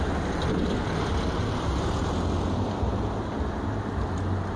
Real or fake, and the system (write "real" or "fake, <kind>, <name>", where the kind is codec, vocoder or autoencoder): real